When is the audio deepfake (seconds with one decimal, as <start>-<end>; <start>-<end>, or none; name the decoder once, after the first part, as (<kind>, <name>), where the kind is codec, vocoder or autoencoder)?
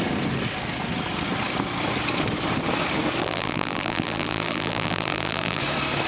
3.2-5.6 (vocoder, BigVGAN v2)